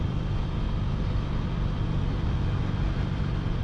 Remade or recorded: recorded